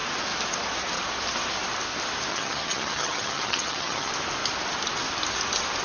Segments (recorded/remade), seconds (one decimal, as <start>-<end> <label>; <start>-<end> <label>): 0.0-2.3 recorded; 2.3-4.1 remade; 4.1-5.8 recorded